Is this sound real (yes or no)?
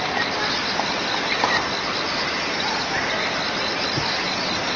yes